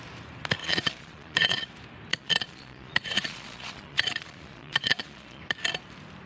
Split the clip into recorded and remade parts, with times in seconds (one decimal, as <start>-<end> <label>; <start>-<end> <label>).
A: 0.0-0.6 recorded; 0.6-1.7 remade; 1.7-2.1 recorded; 2.1-5.4 remade; 5.4-6.3 recorded